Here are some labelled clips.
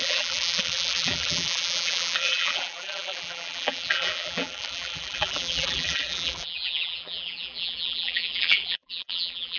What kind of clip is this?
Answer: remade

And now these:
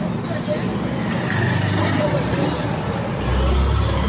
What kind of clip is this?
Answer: recorded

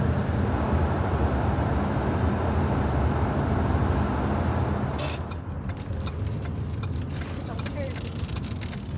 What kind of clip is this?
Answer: recorded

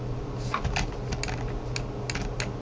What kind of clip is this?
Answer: recorded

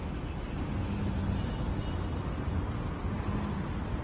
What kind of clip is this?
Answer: recorded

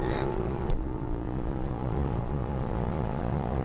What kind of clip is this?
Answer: remade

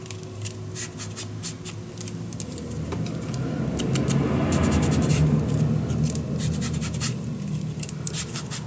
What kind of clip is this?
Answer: recorded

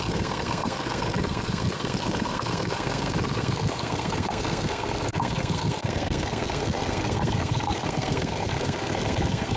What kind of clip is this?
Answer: remade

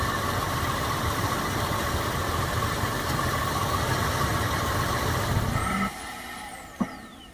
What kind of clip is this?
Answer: remade